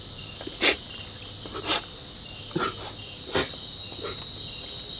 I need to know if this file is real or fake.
real